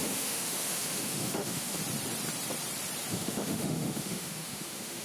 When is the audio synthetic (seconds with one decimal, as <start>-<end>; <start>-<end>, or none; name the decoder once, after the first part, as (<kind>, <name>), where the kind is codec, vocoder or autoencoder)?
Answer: 0.0-1.8 (autoencoder, DAC-VAE); 3.1-5.0